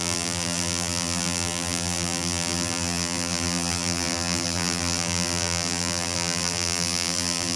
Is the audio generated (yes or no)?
yes